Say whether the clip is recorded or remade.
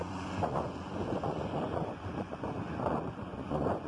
remade